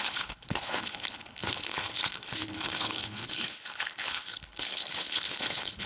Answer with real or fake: fake